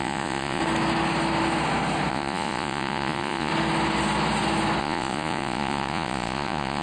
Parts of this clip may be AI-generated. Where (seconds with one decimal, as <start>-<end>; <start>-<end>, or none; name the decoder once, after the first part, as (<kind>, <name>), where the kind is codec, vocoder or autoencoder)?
0.0-0.6 (vocoder, Vocos); 2.1-3.5; 4.8-6.8